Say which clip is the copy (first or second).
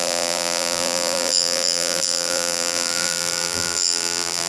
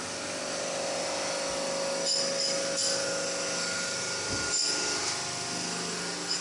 first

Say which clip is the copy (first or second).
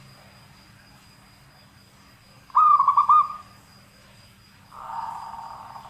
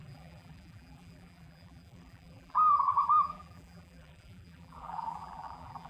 second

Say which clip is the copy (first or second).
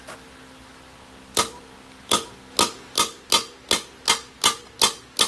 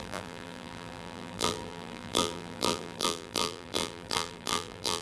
second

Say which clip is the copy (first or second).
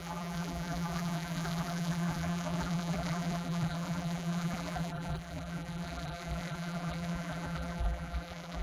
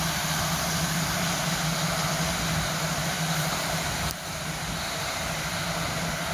first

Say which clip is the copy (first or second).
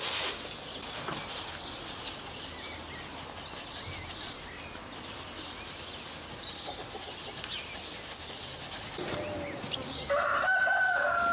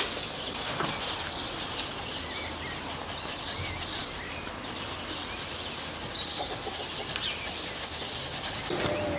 second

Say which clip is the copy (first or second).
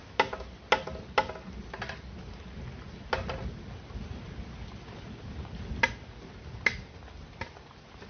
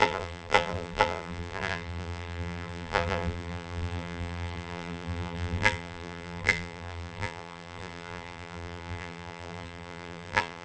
second